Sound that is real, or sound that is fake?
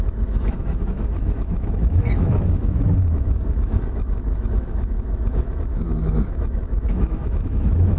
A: fake